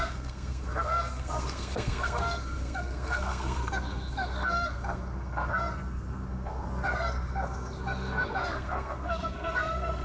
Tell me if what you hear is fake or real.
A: fake